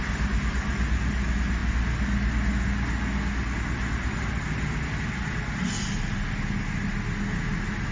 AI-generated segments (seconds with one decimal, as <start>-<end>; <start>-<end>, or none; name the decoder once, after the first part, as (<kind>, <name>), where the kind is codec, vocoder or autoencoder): none